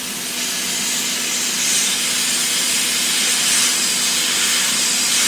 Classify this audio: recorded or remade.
recorded